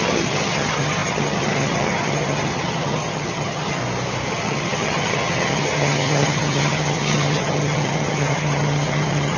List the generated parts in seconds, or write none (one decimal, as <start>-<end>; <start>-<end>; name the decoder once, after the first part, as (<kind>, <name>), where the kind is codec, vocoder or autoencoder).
0.0-3.8 (vocoder, HiFi-GAN); 4.3-9.4